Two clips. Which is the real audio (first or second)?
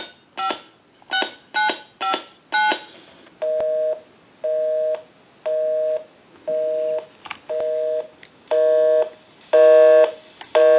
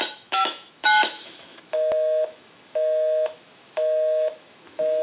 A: first